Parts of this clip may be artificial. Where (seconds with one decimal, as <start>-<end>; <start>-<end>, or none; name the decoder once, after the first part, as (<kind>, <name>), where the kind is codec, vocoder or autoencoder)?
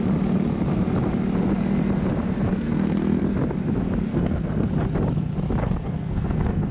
2.5-3.4 (codec, SNAC); 4.1-4.7; 5.6-6.7